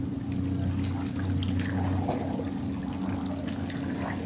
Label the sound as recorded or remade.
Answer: recorded